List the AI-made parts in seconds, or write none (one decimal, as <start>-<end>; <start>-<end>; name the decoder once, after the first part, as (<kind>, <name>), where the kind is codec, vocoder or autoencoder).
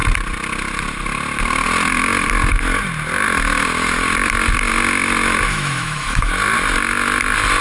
5.5-6.3 (autoencoder, DAC-VAE)